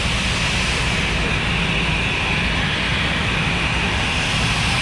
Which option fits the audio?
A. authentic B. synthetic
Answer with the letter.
A